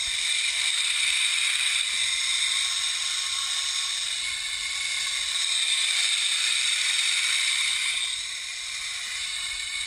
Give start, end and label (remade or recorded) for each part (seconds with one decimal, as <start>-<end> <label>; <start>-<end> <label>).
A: 0.0-0.7 recorded; 0.7-1.3 remade; 1.3-5.3 recorded; 5.3-9.9 remade